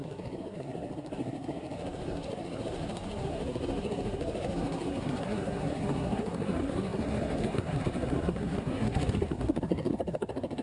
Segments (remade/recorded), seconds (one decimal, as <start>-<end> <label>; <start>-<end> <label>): 0.0-10.6 remade